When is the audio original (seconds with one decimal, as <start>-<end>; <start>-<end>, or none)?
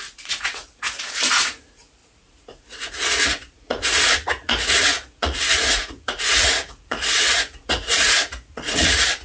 none